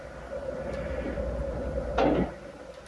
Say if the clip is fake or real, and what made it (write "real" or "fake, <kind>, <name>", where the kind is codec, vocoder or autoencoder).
real